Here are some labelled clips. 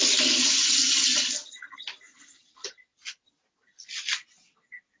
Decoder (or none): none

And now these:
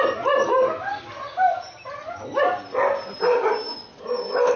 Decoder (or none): none